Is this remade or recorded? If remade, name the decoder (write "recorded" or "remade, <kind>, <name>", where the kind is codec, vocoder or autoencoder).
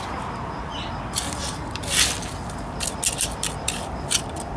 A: recorded